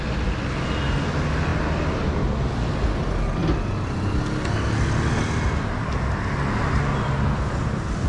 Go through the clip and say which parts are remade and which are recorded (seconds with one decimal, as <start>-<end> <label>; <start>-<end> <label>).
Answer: 0.0-8.1 recorded